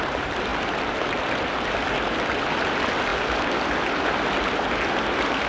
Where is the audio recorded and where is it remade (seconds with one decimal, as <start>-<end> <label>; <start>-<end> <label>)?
0.0-5.5 recorded